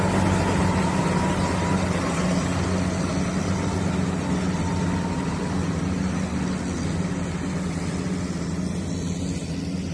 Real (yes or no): yes